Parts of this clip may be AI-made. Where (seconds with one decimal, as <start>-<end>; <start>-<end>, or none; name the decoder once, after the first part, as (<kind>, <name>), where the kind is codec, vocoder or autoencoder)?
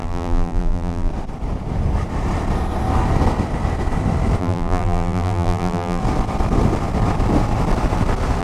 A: 0.0-1.1 (vocoder, BigVGAN v2); 4.4-6.0